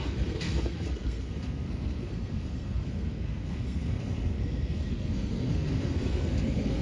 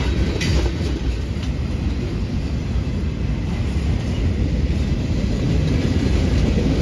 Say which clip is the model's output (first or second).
first